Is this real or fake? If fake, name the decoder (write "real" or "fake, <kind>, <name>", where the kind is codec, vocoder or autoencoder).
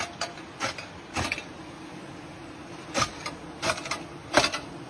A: real